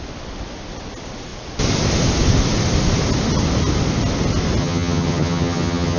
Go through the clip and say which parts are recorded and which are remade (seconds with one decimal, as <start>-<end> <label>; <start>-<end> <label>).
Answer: 0.0-4.6 recorded; 4.6-6.0 remade